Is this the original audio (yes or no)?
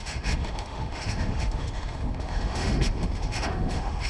no